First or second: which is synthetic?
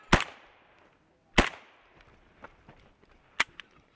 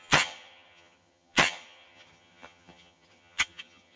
second